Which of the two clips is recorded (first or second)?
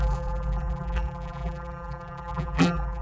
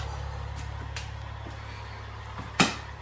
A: second